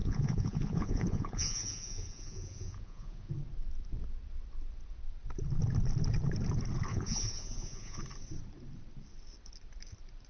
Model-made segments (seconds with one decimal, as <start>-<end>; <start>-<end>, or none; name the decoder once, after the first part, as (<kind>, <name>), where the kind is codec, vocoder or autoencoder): 0.0-3.3 (vocoder, Vocos); 6.9-8.0